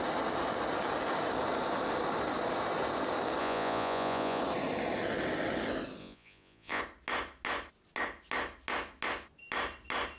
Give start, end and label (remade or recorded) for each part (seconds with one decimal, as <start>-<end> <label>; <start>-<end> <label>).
0.0-3.4 recorded; 3.4-4.4 remade; 4.4-6.0 recorded; 6.0-6.8 remade; 6.8-10.2 recorded